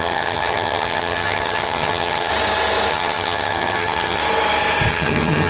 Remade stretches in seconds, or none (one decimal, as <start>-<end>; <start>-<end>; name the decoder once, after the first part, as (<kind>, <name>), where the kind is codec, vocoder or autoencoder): 0.0-2.3 (vocoder, HiFi-GAN); 2.9-4.2; 4.9-5.5